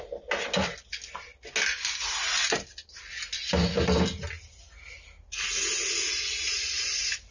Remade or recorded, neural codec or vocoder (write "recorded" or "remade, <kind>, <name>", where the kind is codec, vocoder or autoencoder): recorded